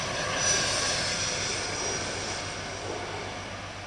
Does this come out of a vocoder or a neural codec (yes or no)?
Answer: no